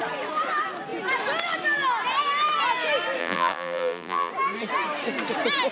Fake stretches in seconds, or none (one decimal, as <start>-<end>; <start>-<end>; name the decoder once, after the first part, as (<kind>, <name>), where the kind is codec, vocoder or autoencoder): 3.2-4.3 (vocoder, BigVGAN v2)